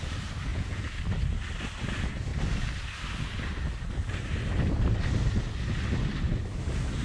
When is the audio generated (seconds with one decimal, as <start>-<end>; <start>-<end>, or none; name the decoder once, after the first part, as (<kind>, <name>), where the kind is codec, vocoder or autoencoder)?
0.5-1.0 (vocoder, Vocos)